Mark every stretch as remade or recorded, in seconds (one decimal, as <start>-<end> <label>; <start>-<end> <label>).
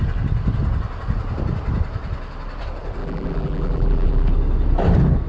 0.0-3.0 recorded; 3.0-4.3 remade; 4.3-5.3 recorded